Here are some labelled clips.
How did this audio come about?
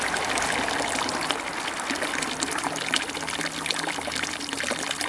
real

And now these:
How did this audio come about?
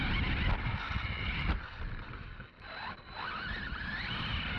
real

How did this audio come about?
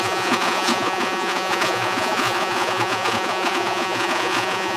fake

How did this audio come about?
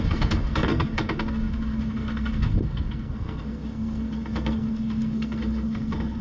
fake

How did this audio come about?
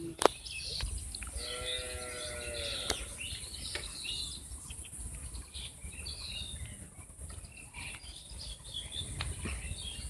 real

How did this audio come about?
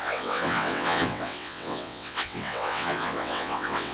fake